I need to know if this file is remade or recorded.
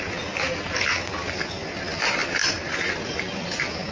remade